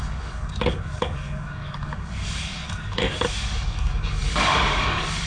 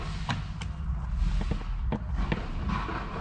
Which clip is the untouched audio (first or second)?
second